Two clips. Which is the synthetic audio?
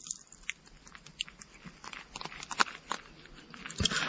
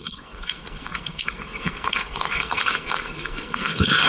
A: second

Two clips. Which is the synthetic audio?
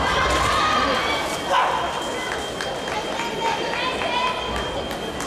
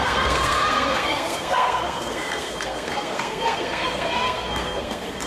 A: second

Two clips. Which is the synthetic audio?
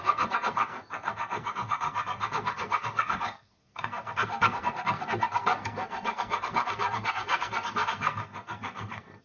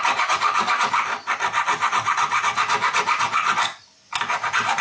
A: first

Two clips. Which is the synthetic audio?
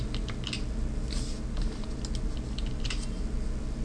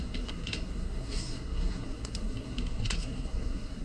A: second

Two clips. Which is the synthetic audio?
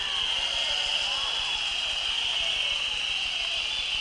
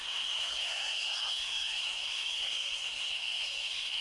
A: second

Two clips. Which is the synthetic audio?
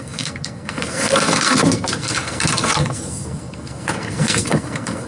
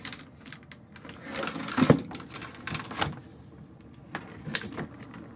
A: first